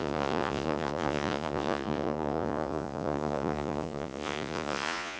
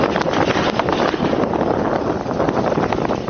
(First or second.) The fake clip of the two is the first